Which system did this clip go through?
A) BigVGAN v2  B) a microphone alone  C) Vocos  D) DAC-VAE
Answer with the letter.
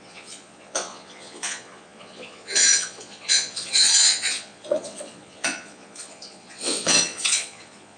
C